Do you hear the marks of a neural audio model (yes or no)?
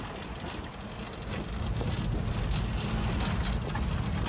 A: no